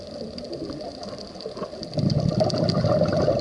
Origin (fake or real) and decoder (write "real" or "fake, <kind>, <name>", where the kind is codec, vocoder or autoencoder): real